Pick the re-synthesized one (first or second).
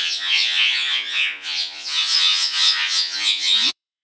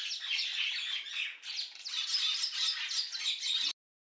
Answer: first